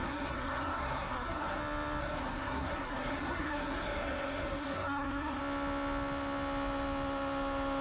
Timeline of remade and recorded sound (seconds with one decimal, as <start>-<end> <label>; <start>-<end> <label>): 0.0-1.6 remade; 1.6-2.0 recorded; 2.0-5.4 remade; 5.4-7.8 recorded